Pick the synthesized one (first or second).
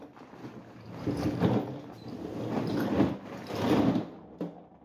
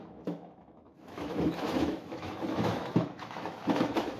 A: second